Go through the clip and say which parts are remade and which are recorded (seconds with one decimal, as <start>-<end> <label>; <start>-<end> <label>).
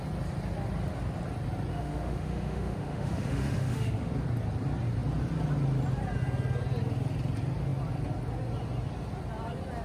0.0-1.7 recorded; 1.7-4.1 remade; 4.1-9.8 recorded